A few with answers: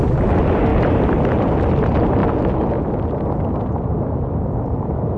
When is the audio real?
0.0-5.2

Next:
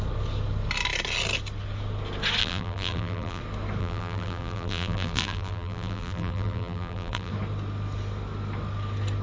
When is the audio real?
0.0-2.4; 3.4-3.8; 7.3-9.2